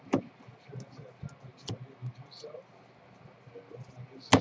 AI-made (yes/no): no